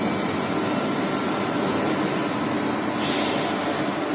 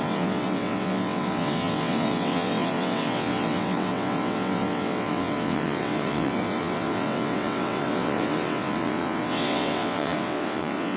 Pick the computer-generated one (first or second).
second